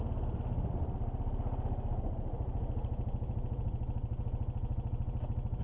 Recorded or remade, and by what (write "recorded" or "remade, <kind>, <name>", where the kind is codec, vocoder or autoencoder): recorded